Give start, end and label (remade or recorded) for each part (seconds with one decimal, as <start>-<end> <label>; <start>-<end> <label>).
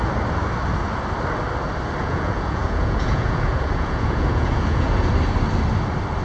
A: 0.0-2.0 recorded; 2.0-5.1 remade; 5.1-6.2 recorded